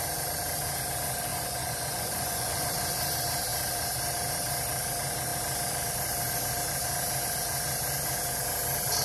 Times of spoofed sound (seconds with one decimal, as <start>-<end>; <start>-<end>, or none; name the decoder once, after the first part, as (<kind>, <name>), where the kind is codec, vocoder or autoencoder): 1.3-2.7 (vocoder, Vocos)